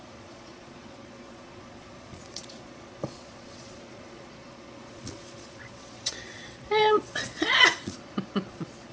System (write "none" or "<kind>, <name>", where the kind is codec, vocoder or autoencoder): vocoder, Vocos